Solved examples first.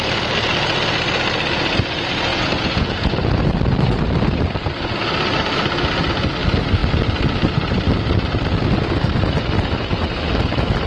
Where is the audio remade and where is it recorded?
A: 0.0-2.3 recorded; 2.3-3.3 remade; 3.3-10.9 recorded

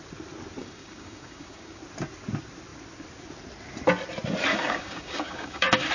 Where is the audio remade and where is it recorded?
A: 0.0-0.6 recorded; 0.6-1.8 remade; 1.8-4.5 recorded; 4.5-5.9 remade

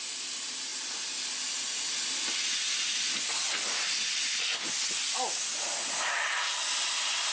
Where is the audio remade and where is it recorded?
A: 0.0-7.3 recorded

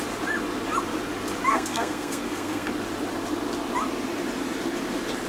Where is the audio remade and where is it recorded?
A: 0.0-1.5 recorded; 1.5-2.7 remade; 2.7-5.3 recorded

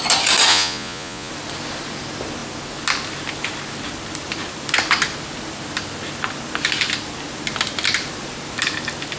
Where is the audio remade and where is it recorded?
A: 0.0-0.5 recorded; 0.5-1.3 remade; 1.3-9.2 recorded

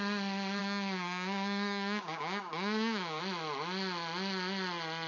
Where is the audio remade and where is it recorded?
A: 0.0-0.6 recorded; 0.6-3.2 remade; 3.2-5.1 recorded

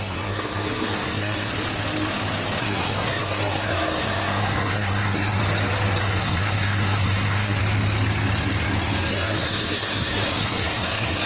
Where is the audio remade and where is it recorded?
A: 0.0-1.5 remade; 1.5-2.6 recorded; 2.6-5.4 remade; 5.4-6.0 recorded; 6.0-7.6 remade; 7.6-9.1 recorded; 9.1-11.3 remade

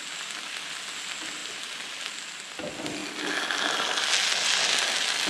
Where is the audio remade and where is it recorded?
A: 0.0-5.3 recorded